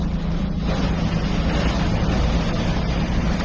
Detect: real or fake real